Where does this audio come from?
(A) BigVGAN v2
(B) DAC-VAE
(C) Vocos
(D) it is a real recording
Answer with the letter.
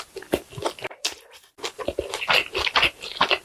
D